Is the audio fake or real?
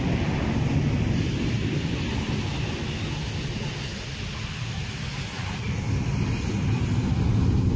real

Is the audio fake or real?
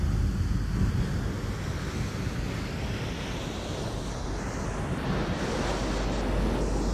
real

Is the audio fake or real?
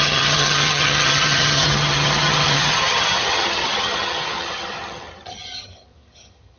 fake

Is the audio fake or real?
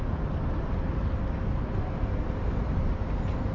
real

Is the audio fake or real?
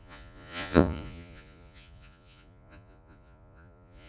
fake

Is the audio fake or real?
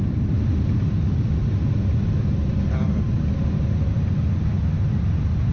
real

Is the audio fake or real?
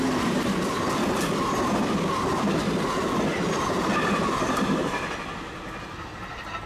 real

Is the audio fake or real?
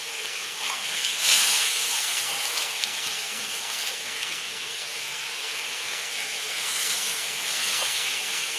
fake